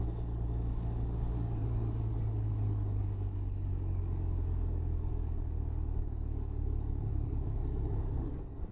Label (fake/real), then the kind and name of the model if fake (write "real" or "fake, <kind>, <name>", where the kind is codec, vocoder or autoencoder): fake, codec, DAC